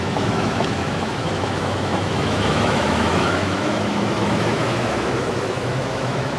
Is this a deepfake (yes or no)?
yes